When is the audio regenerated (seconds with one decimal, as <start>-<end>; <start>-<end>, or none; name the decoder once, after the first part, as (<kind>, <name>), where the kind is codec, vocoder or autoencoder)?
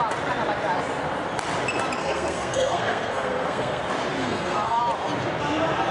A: 2.0-3.8 (codec, SNAC); 4.2-4.8